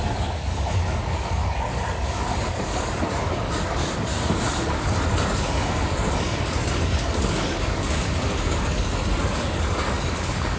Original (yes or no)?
no